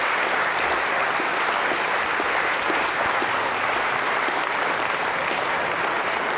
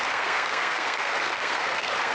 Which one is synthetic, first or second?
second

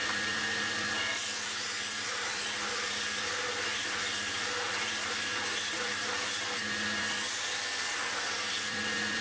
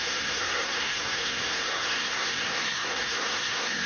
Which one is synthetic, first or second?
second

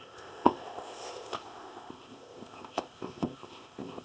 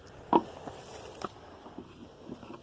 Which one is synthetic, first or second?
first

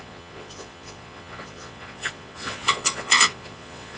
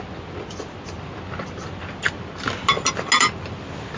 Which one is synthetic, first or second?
first